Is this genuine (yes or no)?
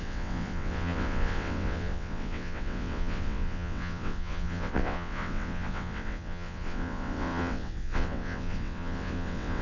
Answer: no